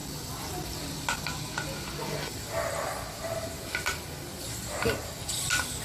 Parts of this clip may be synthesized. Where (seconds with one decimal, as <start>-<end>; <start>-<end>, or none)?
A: none